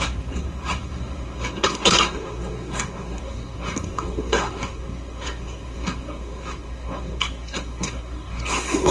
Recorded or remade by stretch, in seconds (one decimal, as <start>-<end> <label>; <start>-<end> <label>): 0.0-8.9 remade